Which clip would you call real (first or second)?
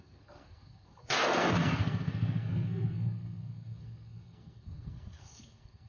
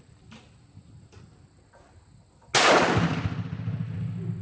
second